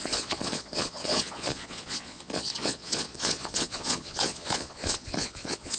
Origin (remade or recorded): remade